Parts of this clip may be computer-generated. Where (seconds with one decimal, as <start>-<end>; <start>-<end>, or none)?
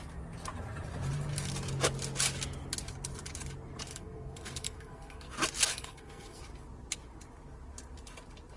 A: 3.9-5.3; 5.7-6.4